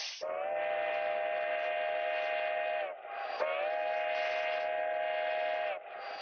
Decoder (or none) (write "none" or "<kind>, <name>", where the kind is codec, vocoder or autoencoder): none